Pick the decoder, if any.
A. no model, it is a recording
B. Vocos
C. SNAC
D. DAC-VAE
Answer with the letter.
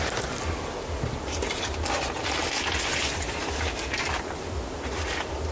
A